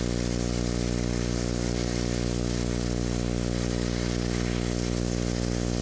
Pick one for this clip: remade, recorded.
recorded